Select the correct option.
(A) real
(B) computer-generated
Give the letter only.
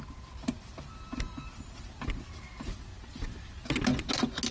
A